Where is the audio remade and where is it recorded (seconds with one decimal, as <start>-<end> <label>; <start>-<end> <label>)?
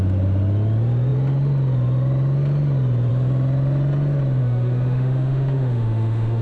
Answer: 0.0-4.4 recorded; 4.4-6.4 remade